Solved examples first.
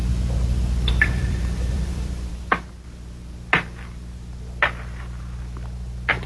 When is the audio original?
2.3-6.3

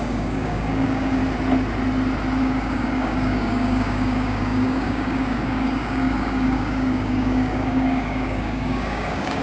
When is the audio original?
1.2-2.4

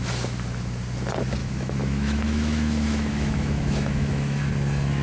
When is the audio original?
0.0-1.4; 4.4-5.0

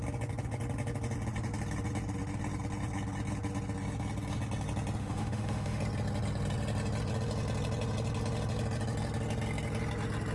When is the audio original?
0.0-5.0; 5.8-10.3

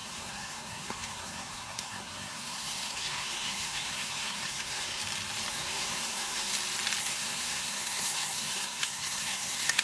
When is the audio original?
5.0-5.5; 6.5-7.0

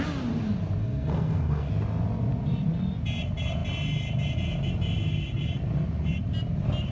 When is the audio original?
0.0-0.8; 1.7-6.9

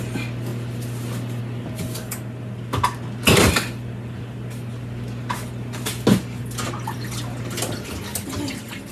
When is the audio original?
0.0-8.9

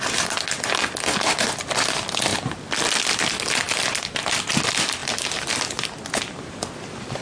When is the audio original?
0.0-7.2